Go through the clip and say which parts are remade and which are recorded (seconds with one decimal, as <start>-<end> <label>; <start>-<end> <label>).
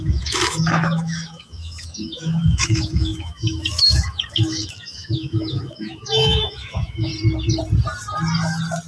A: 0.0-7.1 remade; 7.1-8.9 recorded